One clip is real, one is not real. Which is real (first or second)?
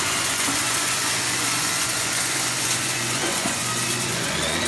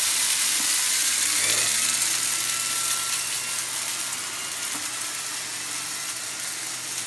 second